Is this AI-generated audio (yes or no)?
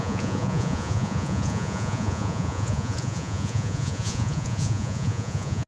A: yes